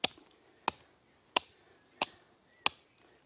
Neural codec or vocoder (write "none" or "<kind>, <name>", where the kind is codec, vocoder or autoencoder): none